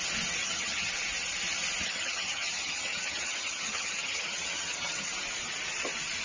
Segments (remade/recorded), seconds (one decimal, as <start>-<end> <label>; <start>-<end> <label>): 0.0-0.4 recorded; 0.4-0.9 remade; 0.9-1.8 recorded; 1.8-5.1 remade; 5.1-6.2 recorded